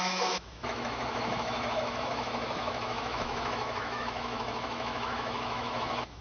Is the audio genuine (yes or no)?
no